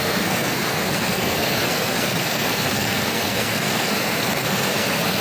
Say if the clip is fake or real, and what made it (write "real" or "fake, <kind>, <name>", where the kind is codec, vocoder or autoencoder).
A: fake, codec, SNAC